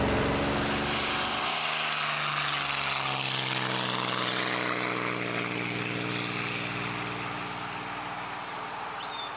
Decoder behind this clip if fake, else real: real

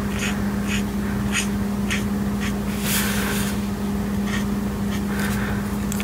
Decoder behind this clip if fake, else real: real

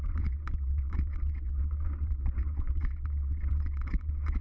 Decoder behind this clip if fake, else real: fake, vocoder, WaveNeXt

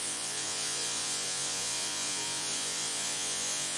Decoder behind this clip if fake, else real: fake, vocoder, Vocos